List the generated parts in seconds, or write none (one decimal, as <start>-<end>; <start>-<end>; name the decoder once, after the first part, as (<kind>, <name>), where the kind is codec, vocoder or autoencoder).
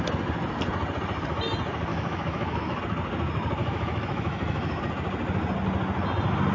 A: 1.9-2.8 (autoencoder, DAC-VAE); 3.6-4.8